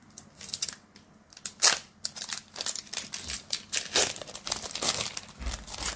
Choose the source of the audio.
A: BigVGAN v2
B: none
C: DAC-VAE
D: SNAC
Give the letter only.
B